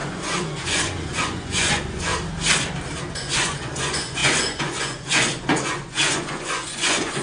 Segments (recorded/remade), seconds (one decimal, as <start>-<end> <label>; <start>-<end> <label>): 0.0-2.1 remade; 2.1-3.1 recorded; 3.1-7.2 remade